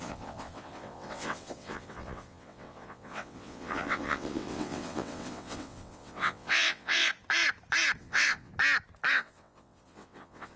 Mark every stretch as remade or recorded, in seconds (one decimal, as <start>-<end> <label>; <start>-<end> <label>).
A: 0.0-7.1 remade; 7.1-8.0 recorded; 8.0-8.5 remade; 8.5-9.1 recorded; 9.1-10.6 remade